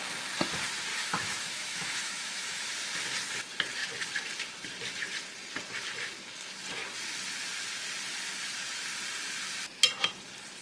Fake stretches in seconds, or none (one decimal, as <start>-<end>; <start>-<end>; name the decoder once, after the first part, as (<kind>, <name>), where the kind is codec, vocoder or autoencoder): 0.9-2.7 (autoencoder, DAC-VAE)